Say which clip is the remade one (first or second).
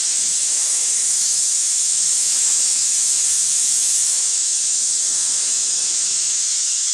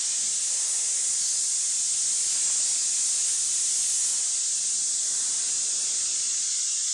first